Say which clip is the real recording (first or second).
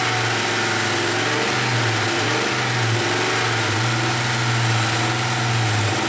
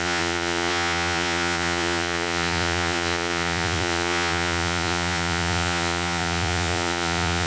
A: first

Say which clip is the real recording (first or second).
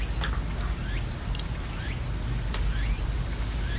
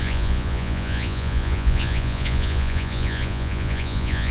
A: first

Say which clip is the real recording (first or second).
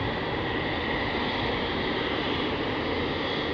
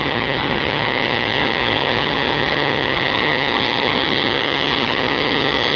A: first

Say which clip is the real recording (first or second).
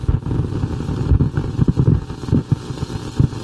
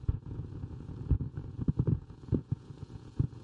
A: first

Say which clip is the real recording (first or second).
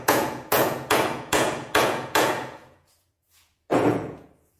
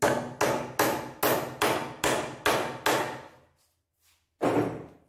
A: second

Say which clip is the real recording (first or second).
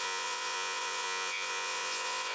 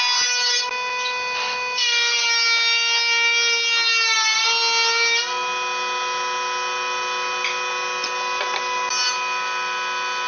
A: second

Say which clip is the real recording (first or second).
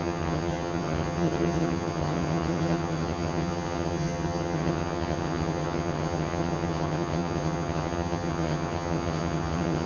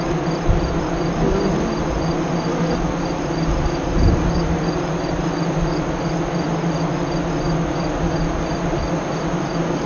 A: second